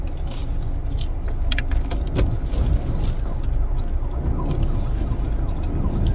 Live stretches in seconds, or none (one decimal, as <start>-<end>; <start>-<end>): 0.0-6.1